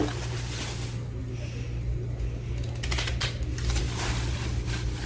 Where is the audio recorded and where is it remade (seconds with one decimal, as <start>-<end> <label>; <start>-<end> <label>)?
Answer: 0.0-5.1 recorded

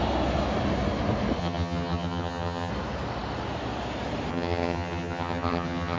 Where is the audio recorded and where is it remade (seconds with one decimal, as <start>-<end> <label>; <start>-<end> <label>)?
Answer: 0.0-1.4 recorded; 1.4-2.7 remade; 2.7-4.3 recorded; 4.3-6.0 remade

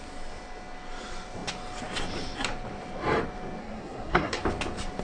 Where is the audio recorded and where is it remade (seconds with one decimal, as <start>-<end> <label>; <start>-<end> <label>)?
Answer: 0.0-3.6 recorded; 3.6-4.4 remade; 4.4-5.0 recorded